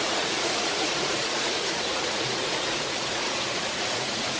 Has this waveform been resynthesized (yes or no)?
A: yes